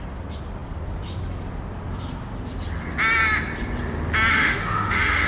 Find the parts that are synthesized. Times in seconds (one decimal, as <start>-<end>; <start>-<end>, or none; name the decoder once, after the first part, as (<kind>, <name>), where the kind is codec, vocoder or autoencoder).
4.3-5.3 (autoencoder, DAC-VAE)